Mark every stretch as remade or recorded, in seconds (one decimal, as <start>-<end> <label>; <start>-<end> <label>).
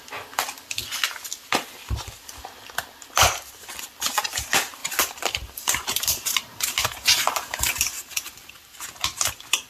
0.0-4.8 recorded; 4.8-8.5 remade; 8.5-9.7 recorded